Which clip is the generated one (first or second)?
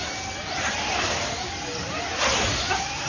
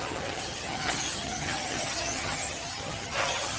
second